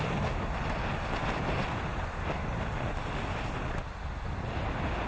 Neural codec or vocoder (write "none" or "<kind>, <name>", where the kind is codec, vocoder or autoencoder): none